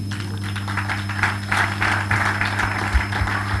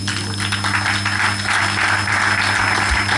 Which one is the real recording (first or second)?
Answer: second